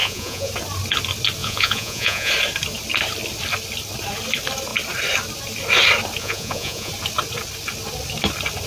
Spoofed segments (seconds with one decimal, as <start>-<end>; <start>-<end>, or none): 0.0-0.5; 1.4-2.3; 6.2-6.9